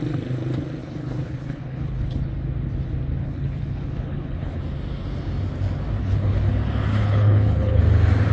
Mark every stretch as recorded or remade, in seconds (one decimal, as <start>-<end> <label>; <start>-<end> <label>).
0.0-0.8 recorded; 0.8-2.2 remade; 2.2-3.2 recorded; 3.2-4.6 remade; 4.6-6.0 recorded; 6.0-6.5 remade; 6.5-6.9 recorded; 6.9-7.8 remade; 7.8-8.3 recorded